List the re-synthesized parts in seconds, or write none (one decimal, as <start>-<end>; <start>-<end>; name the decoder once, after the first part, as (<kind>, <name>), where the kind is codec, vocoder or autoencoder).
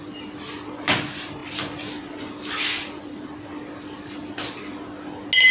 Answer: none